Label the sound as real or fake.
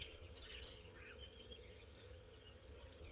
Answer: fake